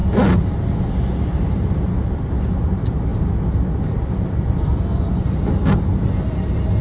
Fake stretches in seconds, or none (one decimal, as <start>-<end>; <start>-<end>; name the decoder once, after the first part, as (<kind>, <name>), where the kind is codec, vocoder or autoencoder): none